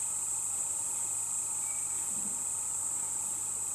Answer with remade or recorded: recorded